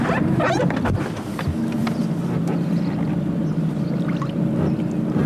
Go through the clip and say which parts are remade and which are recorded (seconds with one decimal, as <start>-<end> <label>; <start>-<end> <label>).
0.0-5.3 recorded